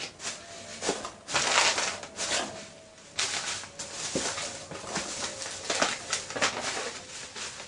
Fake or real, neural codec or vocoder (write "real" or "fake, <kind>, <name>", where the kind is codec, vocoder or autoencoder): real